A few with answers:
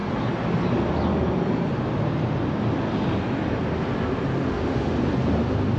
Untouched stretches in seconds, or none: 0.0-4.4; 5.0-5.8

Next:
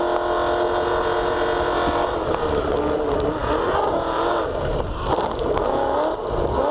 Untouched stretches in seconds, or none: 0.0-6.7

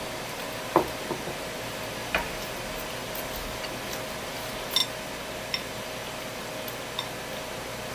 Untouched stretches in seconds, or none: 0.0-7.9

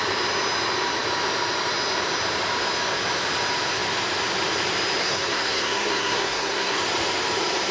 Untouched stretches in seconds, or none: 0.0-5.0; 6.8-7.7

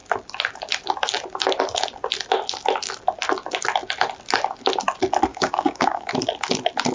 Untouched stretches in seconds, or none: 0.0-5.3; 6.1-6.9

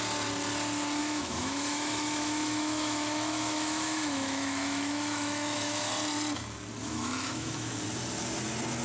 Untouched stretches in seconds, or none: 0.0-1.0; 5.9-6.8; 7.7-8.8

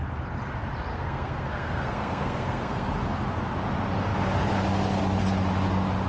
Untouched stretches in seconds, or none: 0.0-0.9; 2.9-6.1

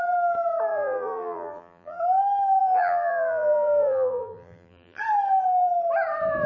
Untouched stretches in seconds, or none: 0.0-0.7; 2.0-2.6; 5.0-6.5